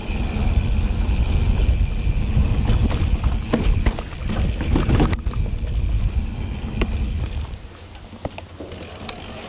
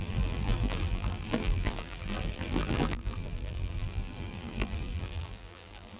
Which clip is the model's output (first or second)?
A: second